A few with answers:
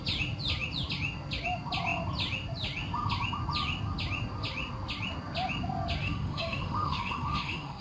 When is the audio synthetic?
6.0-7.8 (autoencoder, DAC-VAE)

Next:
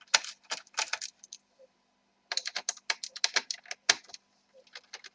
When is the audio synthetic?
none

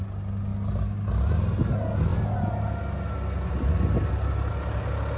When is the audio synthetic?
none

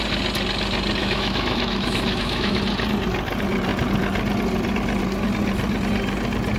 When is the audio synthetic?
1.0-2.6 (autoencoder, DAC-VAE)

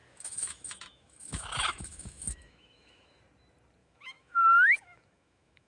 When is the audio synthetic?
0.0-3.2 (autoencoder, DAC-VAE); 3.8-5.7

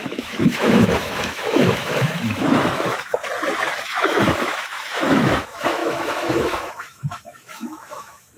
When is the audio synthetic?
0.0-3.2 (autoencoder, DAC-VAE); 3.8-8.4